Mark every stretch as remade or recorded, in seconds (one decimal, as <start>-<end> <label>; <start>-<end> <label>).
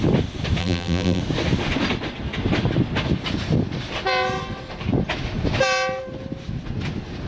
0.0-0.6 recorded; 0.6-1.2 remade; 1.2-7.3 recorded